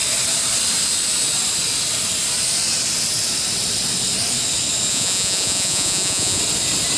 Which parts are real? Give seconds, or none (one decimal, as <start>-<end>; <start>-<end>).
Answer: 0.0-4.9; 6.4-7.0